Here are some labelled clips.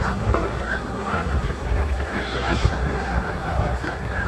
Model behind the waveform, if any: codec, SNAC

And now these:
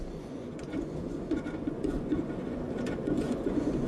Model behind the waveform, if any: vocoder, Vocos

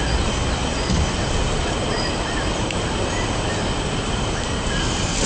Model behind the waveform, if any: none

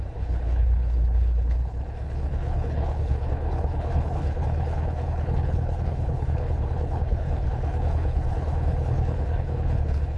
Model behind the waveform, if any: codec, HILCodec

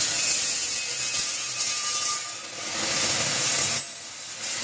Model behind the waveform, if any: none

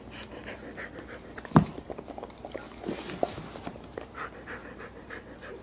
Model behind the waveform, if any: none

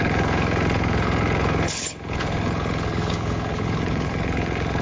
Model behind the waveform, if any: codec, HILCodec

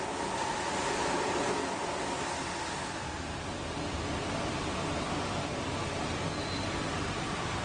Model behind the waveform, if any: none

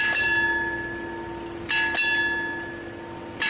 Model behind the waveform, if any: none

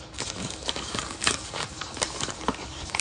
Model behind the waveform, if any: codec, DAC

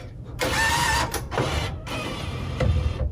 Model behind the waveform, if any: vocoder, BigVGAN v2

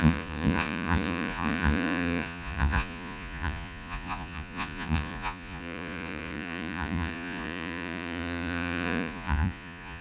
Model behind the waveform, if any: vocoder, Vocos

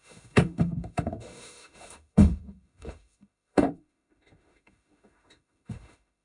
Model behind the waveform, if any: autoencoder, DAC-VAE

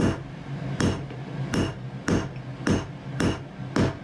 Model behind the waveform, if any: none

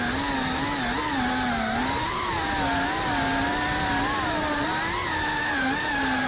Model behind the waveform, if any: none